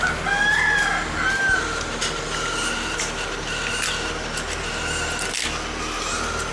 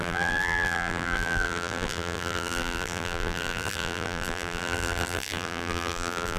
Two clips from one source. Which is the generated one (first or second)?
second